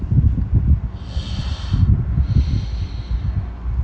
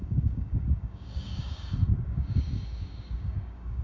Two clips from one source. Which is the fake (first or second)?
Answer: second